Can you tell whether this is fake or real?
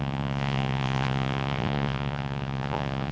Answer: fake